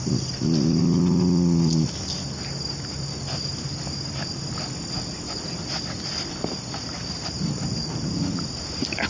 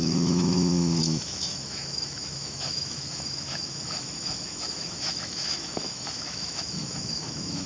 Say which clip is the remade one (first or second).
second